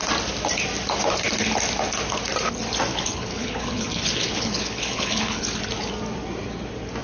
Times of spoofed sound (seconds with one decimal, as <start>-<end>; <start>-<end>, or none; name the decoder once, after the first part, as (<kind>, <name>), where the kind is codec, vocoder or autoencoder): 2.9-5.6 (codec, HILCodec)